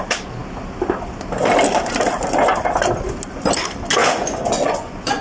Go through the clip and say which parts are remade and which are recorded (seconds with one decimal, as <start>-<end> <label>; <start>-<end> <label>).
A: 0.0-4.0 recorded; 4.0-5.2 remade